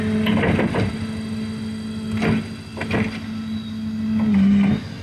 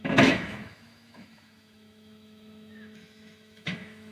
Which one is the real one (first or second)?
first